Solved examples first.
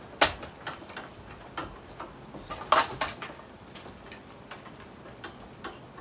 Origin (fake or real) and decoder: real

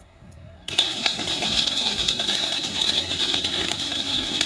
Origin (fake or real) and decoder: fake, codec, SNAC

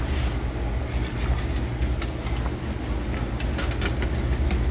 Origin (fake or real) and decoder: real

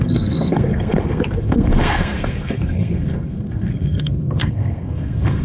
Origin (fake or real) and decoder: fake, codec, SNAC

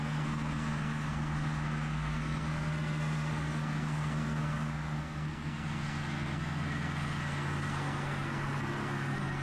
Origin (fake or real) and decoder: fake, codec, SNAC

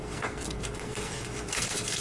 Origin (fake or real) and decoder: fake, codec, SNAC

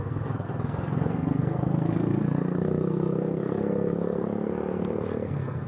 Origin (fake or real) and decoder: fake, codec, SNAC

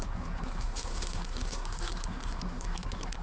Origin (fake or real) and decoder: fake, codec, SNAC